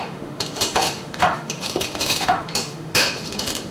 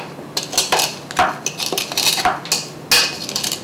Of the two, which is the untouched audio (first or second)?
second